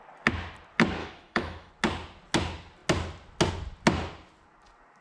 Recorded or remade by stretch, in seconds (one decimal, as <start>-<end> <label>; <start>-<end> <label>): 0.0-1.0 recorded; 1.0-1.7 remade; 1.7-5.0 recorded